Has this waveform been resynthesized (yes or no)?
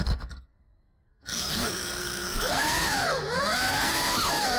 yes